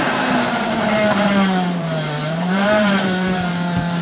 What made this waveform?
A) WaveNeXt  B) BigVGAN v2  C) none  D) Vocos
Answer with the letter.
B